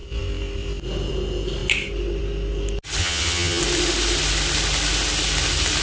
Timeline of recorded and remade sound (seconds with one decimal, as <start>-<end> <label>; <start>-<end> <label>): 0.0-3.0 recorded; 3.0-3.6 remade; 3.6-5.8 recorded